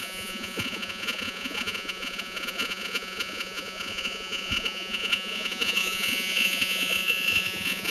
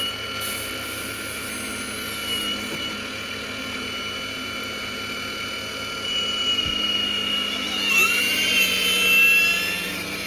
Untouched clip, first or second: second